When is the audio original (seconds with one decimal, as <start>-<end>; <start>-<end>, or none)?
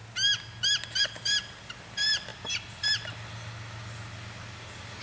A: 0.0-5.0